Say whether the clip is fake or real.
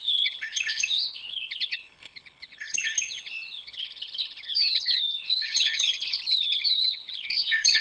fake